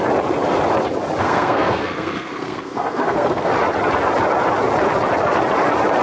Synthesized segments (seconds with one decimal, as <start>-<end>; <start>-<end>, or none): 1.2-3.5